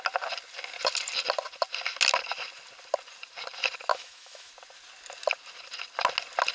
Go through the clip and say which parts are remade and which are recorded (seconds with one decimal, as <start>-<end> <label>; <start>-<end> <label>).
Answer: 0.0-3.9 recorded; 3.9-4.5 remade; 4.5-6.5 recorded